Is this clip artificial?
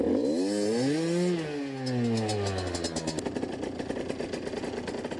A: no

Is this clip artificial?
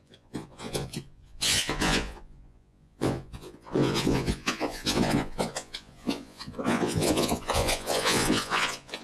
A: yes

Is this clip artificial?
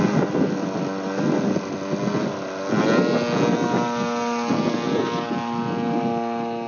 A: no